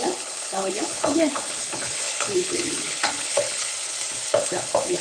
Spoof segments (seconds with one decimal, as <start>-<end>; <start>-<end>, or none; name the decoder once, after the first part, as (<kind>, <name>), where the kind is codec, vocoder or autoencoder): 0.0-3.7 (codec, HILCodec); 4.3-5.0